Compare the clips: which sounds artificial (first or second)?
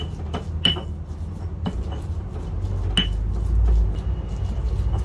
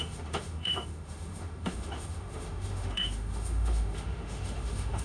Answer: second